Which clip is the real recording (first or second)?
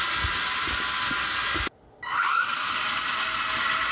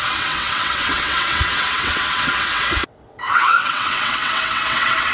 first